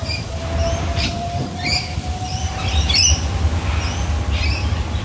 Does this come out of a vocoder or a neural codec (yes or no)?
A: no